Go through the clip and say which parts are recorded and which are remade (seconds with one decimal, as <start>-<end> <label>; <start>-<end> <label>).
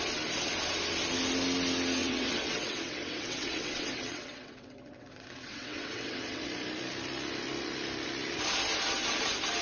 0.0-2.0 recorded; 2.0-6.4 remade; 6.4-9.6 recorded